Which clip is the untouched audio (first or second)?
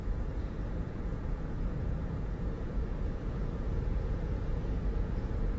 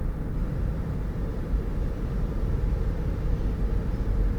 second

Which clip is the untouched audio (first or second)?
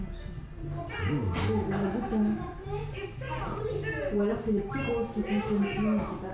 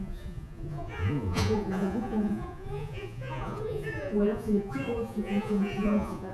first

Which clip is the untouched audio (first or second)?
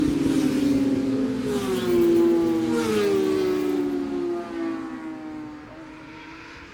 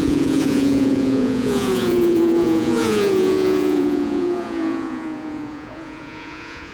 first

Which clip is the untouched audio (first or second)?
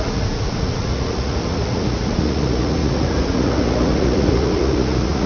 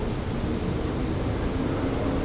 second